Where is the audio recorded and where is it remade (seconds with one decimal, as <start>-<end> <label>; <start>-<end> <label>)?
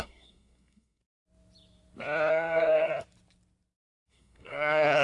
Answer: 0.0-1.0 remade; 1.0-2.3 recorded; 2.3-2.9 remade; 2.9-4.1 recorded; 4.1-5.0 remade